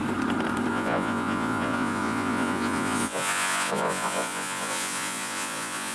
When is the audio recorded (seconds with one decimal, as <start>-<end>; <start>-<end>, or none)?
0.0-0.7